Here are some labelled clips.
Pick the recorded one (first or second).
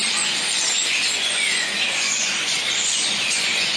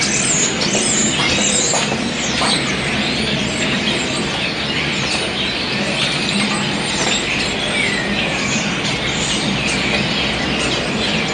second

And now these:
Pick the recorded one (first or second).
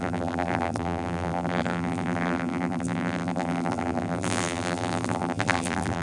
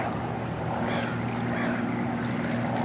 second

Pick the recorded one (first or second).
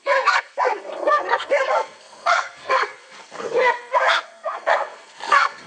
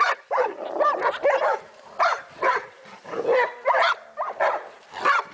second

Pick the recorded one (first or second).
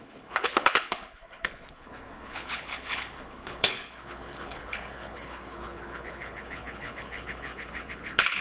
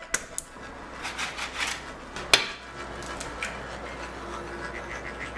second